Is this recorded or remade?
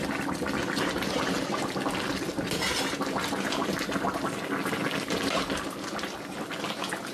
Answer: recorded